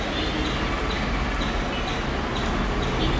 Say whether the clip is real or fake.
real